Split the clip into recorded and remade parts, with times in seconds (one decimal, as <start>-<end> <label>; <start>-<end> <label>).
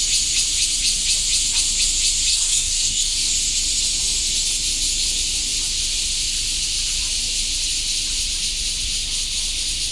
0.0-2.3 recorded; 2.3-3.3 remade; 3.3-9.9 recorded